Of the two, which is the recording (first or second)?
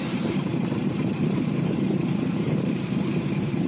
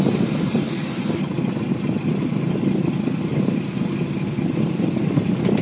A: second